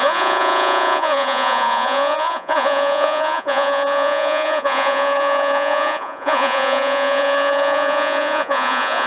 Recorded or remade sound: remade